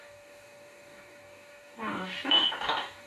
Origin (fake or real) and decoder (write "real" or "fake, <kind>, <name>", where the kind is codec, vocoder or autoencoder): fake, codec, DAC